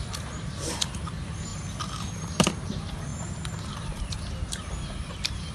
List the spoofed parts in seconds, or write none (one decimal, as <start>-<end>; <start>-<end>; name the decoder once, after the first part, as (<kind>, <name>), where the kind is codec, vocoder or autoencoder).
0.0-1.5 (vocoder, BigVGAN v2); 2.1-5.5